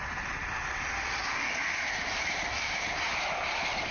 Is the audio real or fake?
real